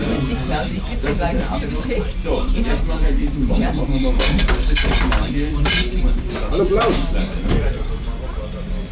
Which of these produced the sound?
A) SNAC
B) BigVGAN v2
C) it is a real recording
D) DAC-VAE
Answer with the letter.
B